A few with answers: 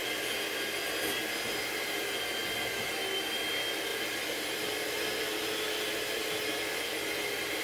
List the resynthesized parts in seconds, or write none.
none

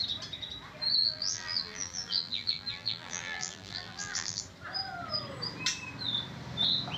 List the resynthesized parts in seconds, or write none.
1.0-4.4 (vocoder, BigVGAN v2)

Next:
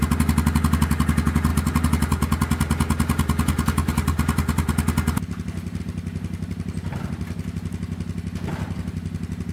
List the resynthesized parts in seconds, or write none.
none